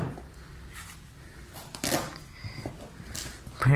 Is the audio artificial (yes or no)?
no